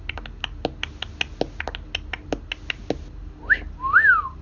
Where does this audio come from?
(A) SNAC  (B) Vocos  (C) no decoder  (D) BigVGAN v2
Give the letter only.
C